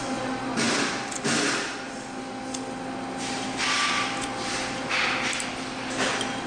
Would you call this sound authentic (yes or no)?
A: yes